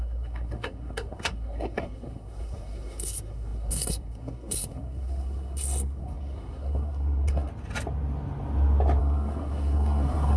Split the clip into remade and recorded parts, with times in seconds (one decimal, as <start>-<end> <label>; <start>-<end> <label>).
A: 0.0-7.5 remade; 7.5-9.0 recorded; 9.0-10.4 remade

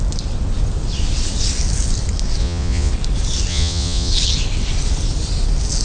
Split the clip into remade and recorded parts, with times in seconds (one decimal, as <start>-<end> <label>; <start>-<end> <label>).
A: 0.0-2.4 recorded; 2.4-2.9 remade; 2.9-3.5 recorded; 3.5-4.1 remade; 4.1-5.8 recorded

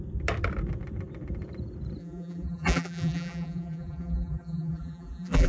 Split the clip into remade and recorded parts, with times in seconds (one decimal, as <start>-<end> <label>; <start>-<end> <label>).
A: 0.0-2.0 recorded; 2.0-5.5 remade

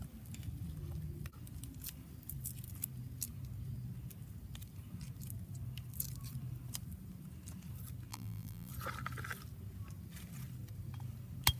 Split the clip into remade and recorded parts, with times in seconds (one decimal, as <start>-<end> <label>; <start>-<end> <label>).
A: 0.0-8.1 recorded; 8.1-8.7 remade; 8.7-11.6 recorded

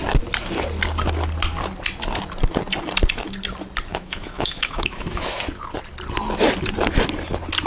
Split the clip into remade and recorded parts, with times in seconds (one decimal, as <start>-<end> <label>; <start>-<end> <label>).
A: 0.0-3.9 recorded; 3.9-5.4 remade; 5.4-7.7 recorded